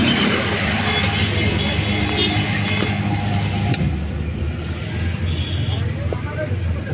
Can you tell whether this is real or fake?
real